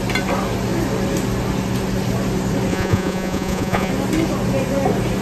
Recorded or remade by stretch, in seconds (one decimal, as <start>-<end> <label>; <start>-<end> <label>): 0.0-2.7 recorded; 2.7-3.9 remade; 3.9-5.2 recorded